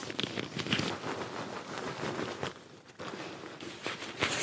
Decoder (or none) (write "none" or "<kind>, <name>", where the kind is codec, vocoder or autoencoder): none